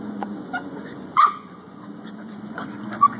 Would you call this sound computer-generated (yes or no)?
yes